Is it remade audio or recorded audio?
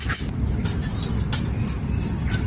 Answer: recorded